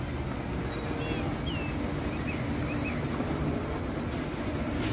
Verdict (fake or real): real